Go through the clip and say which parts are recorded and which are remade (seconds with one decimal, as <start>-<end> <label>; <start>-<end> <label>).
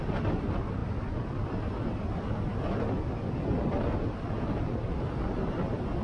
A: 0.0-6.0 recorded